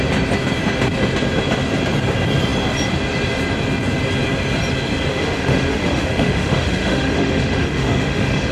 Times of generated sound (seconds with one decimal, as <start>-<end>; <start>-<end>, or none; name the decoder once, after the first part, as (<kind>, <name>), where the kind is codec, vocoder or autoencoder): 5.1-8.5 (autoencoder, DAC-VAE)